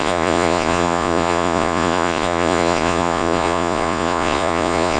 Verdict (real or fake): fake